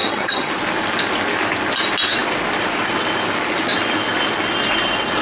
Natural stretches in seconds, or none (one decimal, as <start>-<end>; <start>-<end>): 0.5-5.2

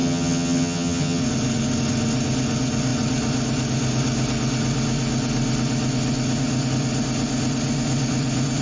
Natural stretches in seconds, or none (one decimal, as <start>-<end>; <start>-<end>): 1.2-8.6

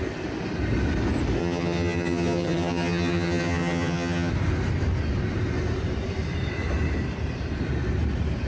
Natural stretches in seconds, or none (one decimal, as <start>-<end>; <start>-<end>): 0.0-1.4; 4.3-8.5

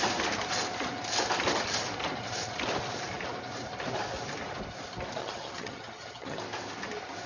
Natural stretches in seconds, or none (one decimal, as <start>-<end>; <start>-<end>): 0.0-5.2; 6.4-7.3